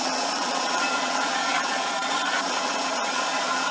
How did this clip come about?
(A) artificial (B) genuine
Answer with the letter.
A